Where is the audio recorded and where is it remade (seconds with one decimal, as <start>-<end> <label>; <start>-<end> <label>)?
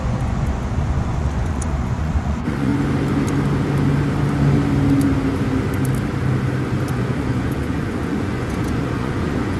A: 0.0-2.7 remade; 2.7-6.9 recorded; 6.9-9.6 remade